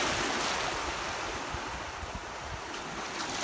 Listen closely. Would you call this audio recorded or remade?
recorded